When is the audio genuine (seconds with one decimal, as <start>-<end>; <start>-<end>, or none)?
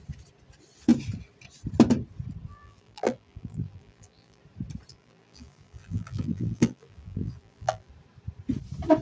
0.0-2.5; 4.4-4.9; 7.9-9.0